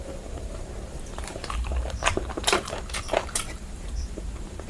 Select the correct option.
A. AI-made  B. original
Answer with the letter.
A